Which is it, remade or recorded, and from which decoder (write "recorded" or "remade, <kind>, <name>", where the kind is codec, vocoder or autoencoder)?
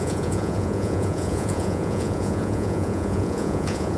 remade, vocoder, Vocos